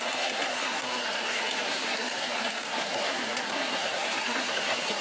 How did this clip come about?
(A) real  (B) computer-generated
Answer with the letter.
B